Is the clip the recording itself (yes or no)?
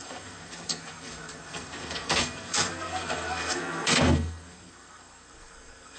no